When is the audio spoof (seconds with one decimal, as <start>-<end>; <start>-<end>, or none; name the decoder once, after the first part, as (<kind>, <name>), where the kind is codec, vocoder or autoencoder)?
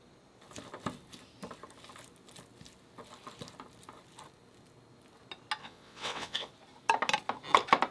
5.6-6.5 (vocoder, WaveNeXt)